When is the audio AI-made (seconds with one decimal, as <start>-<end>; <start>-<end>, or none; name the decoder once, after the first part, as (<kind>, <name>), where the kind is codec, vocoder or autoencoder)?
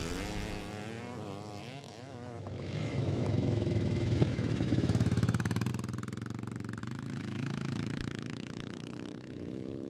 1.6-5.7 (autoencoder, DAC-VAE); 6.8-9.9